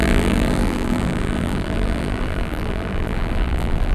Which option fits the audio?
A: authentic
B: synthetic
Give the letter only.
B